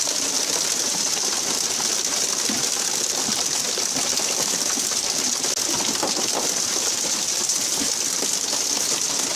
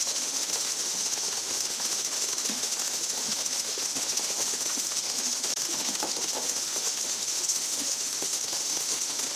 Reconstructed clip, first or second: second